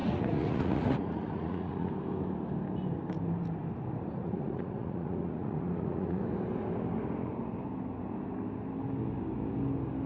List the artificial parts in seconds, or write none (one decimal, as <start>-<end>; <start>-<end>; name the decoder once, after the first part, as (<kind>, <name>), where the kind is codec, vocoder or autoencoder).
0.0-1.9 (vocoder, Vocos); 4.2-6.2

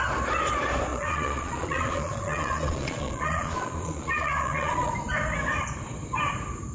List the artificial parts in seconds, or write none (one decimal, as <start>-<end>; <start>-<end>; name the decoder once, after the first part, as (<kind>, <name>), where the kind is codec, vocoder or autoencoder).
0.9-4.9 (vocoder, Vocos)

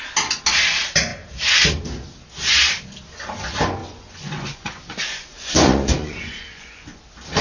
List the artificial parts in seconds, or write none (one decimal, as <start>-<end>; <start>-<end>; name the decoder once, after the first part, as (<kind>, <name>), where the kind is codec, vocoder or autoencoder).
3.8-7.0 (vocoder, Vocos)

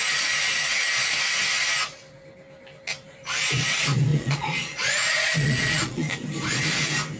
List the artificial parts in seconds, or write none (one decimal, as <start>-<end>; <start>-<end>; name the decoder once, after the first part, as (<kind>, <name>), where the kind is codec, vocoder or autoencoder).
4.1-6.1 (vocoder, Vocos)

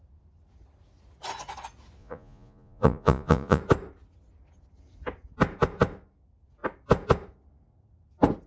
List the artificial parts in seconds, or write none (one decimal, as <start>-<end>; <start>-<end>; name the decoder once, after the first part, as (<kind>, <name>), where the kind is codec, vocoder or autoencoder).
2.0-3.6 (vocoder, Vocos)